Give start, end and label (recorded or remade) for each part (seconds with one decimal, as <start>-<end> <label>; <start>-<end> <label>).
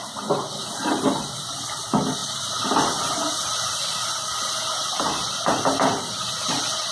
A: 0.0-6.9 recorded